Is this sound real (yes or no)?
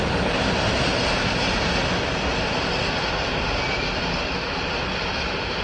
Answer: yes